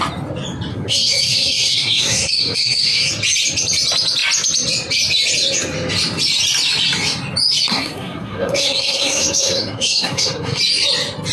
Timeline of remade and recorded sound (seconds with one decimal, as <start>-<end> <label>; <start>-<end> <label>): 0.0-0.7 recorded; 0.7-3.1 remade; 3.1-7.7 recorded; 7.7-10.6 remade; 10.6-11.3 recorded